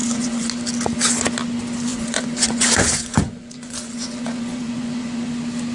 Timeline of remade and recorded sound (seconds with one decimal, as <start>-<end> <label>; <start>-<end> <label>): 0.0-0.5 remade; 0.5-1.9 recorded; 1.9-5.3 remade; 5.3-5.7 recorded